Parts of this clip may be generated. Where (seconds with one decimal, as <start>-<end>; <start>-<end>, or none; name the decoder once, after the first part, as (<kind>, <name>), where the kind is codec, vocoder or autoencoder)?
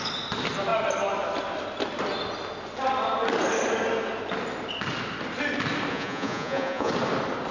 5.9-6.9 (vocoder, Vocos)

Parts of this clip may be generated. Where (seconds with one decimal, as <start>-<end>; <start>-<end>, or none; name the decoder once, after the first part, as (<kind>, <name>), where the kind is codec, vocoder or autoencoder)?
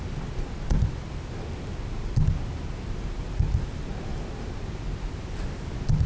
none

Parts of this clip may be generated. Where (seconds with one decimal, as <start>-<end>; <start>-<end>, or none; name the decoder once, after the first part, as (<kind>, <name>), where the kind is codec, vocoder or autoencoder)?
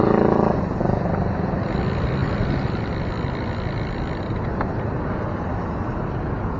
none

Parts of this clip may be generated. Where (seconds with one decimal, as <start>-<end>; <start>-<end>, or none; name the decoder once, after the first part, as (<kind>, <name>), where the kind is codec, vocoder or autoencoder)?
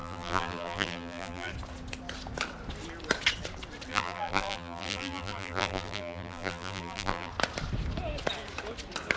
0.0-1.5 (vocoder, BigVGAN v2); 3.9-7.3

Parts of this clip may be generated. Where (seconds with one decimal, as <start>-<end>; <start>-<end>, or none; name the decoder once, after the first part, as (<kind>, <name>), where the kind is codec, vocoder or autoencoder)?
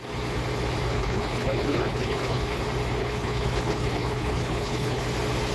0.9-2.6 (codec, HILCodec); 3.0-5.0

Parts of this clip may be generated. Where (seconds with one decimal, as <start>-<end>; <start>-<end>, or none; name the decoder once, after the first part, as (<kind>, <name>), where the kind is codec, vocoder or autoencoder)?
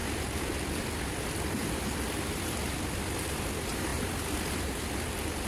none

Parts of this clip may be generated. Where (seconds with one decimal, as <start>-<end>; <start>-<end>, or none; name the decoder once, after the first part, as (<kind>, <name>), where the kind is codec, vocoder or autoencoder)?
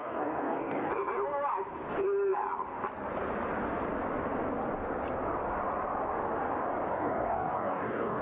0.0-0.9 (codec, DAC); 6.9-8.2